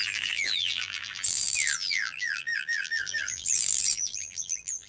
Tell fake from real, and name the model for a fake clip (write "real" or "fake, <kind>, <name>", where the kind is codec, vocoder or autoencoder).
fake, vocoder, BigVGAN v2